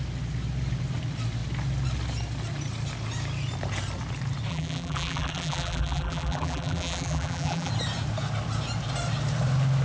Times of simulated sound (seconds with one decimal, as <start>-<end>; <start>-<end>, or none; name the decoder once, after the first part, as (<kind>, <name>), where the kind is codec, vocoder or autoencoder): 4.5-7.7 (vocoder, BigVGAN v2)